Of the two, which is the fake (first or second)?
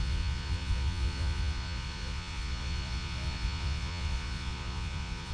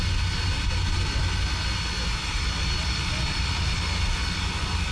first